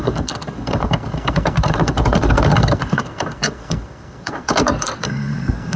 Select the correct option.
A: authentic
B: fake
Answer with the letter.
B